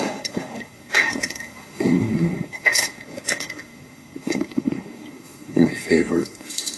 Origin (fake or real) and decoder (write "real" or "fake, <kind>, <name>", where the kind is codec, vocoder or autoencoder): fake, codec, SNAC